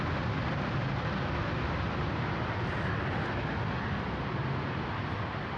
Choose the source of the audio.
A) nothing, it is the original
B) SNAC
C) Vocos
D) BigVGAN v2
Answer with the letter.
A